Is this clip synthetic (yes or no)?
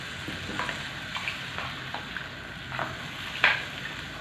no